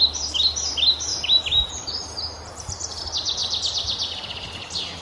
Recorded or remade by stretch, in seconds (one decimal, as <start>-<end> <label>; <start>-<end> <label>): 0.0-1.1 recorded; 1.1-3.0 remade; 3.0-5.0 recorded